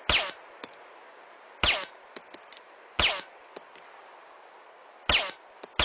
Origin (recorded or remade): recorded